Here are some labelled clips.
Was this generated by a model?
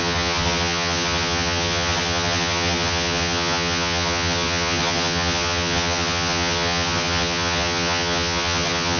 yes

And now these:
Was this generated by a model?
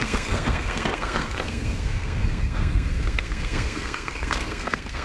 yes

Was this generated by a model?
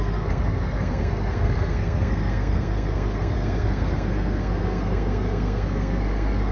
yes